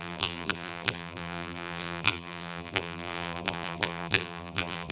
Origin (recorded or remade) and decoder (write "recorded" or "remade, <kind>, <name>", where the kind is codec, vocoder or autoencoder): remade, vocoder, BigVGAN v2